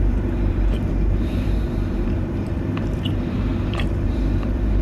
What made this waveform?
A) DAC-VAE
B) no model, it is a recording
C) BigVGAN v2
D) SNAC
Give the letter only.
C